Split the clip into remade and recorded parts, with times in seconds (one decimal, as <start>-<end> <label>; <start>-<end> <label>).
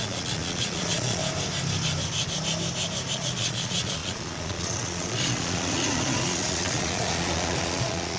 0.0-1.2 remade; 1.2-3.1 recorded; 3.1-8.2 remade